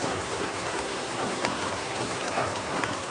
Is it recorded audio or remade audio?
remade